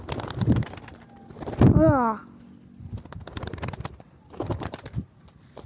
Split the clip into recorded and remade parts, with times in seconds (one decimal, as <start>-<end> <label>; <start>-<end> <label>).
0.0-5.7 recorded